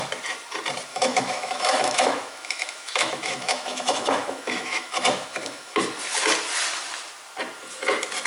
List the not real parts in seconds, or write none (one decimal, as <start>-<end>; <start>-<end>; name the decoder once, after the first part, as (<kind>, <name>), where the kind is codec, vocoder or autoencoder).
0.9-5.8 (autoencoder, DAC-VAE)